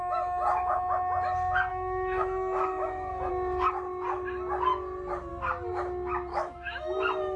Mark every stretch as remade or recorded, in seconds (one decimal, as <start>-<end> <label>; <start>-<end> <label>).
0.0-1.7 recorded; 1.7-3.3 remade; 3.3-6.3 recorded; 6.3-6.8 remade; 6.8-7.4 recorded